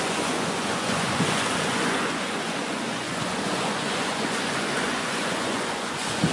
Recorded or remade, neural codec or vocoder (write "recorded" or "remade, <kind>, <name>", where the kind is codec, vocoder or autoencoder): remade, vocoder, Vocos